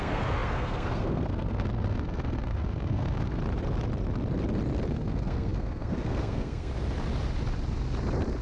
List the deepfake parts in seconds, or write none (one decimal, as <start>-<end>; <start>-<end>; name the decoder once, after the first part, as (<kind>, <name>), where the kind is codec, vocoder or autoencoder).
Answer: 0.0-3.4 (codec, SNAC); 4.9-6.7